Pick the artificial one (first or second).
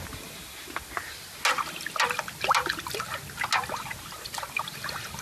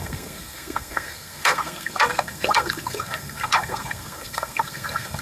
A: second